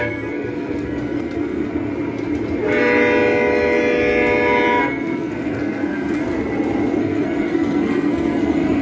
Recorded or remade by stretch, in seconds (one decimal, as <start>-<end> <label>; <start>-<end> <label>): 0.0-1.9 remade; 1.9-4.8 recorded; 4.8-6.2 remade; 6.2-7.0 recorded; 7.0-8.8 remade